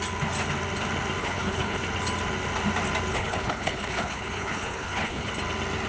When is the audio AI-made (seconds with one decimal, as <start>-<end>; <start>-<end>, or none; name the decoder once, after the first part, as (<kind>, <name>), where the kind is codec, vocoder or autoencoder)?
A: 1.2-1.8 (codec, HILCodec); 3.1-5.3